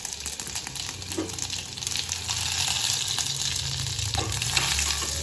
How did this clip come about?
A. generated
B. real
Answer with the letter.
B